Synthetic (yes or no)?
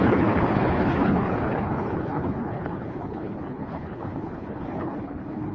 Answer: yes